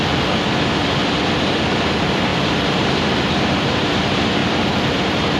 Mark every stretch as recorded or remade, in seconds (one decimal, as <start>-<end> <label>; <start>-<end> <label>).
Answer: 0.0-2.3 recorded; 2.3-4.0 remade; 4.0-4.4 recorded; 4.4-5.4 remade

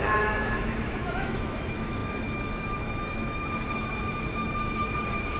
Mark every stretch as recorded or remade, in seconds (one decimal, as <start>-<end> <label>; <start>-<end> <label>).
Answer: 0.0-5.4 remade

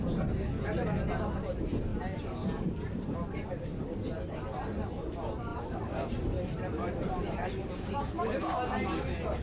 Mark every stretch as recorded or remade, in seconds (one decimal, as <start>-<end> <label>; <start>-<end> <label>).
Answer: 0.0-1.9 recorded; 1.9-2.9 remade; 2.9-5.5 recorded; 5.5-8.0 remade; 8.0-9.4 recorded

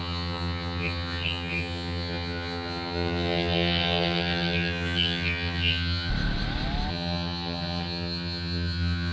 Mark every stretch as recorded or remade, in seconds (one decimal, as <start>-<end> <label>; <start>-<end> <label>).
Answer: 0.0-6.1 remade; 6.1-6.9 recorded; 6.9-9.1 remade